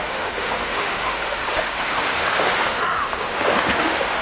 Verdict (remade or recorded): remade